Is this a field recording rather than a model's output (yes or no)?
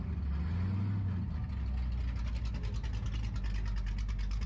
yes